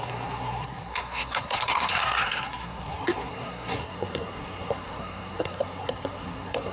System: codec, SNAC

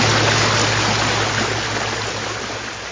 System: none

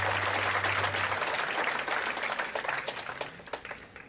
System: none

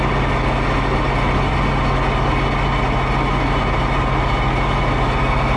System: none